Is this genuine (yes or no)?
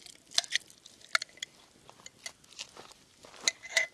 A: yes